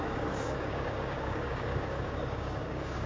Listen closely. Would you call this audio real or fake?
fake